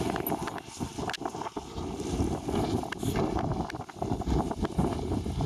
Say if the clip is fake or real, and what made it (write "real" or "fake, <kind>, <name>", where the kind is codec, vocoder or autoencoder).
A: real